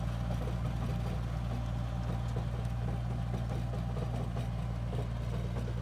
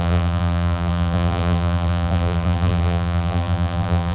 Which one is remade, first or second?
second